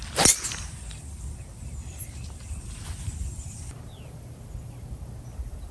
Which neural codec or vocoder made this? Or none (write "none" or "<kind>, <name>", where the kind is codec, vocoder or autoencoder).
none